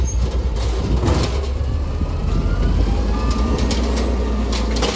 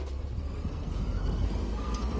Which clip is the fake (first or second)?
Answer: second